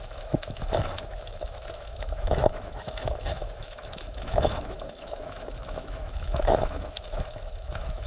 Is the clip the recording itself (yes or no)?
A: no